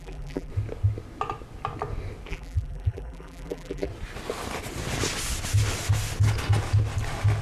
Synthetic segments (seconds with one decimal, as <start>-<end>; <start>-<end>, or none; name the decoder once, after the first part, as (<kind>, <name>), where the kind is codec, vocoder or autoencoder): 0.0-0.5 (vocoder, BigVGAN v2); 2.3-3.9

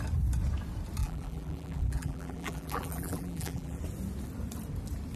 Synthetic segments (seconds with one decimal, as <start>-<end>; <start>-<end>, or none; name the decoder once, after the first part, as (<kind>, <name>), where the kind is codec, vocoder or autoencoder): 1.0-3.8 (vocoder, BigVGAN v2)

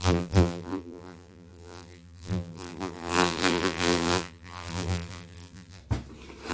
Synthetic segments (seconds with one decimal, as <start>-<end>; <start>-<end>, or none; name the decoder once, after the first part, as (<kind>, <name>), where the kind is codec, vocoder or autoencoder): 0.0-5.8 (vocoder, BigVGAN v2)

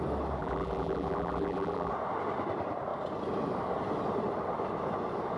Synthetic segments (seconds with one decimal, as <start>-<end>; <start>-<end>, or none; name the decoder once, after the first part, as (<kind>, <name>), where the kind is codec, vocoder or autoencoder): 0.4-1.9 (vocoder, BigVGAN v2)

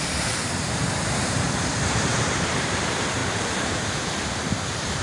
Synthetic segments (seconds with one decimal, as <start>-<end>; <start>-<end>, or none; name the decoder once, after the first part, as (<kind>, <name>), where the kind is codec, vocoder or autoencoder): 0.0-5.0 (vocoder, BigVGAN v2)

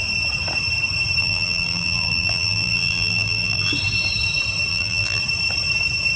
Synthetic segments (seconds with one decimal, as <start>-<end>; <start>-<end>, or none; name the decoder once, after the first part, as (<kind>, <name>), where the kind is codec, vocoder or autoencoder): 1.2-3.7 (vocoder, BigVGAN v2); 4.7-5.2

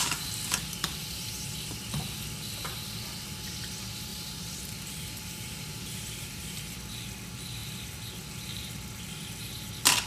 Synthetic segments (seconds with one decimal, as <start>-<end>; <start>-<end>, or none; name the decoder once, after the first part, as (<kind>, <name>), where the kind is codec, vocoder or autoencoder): 1.0-1.8 (vocoder, BigVGAN v2); 4.1-6.6

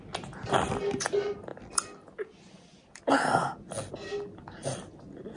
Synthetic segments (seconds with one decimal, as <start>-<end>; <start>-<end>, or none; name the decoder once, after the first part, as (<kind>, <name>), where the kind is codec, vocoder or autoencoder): none